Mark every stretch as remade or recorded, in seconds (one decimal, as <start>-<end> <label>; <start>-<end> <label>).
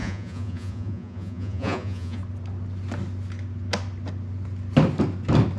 0.0-2.2 remade; 2.2-5.6 recorded